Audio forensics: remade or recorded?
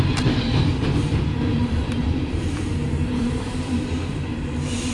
remade